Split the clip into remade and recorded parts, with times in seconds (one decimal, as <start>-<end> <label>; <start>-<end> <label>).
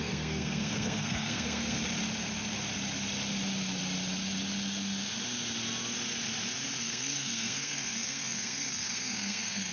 0.0-1.8 remade; 1.8-6.8 recorded; 6.8-9.7 remade